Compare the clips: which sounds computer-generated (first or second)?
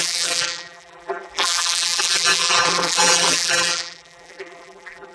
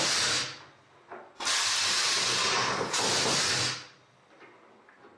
first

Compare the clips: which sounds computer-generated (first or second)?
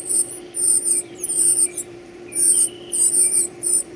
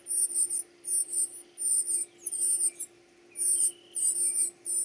first